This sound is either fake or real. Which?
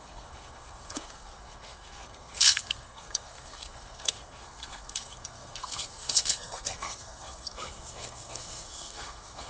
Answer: fake